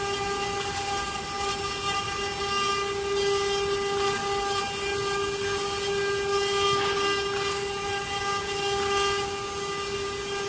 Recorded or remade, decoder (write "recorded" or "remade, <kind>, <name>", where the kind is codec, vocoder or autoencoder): recorded